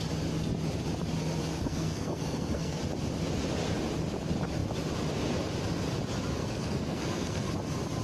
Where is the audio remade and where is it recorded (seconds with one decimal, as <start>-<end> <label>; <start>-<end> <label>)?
0.0-1.4 recorded; 1.4-2.8 remade; 2.8-6.4 recorded; 6.4-7.5 remade; 7.5-8.0 recorded